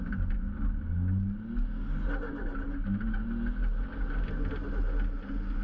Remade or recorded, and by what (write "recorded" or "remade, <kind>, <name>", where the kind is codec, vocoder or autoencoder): recorded